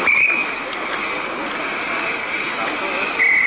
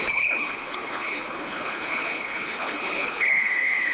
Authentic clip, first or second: first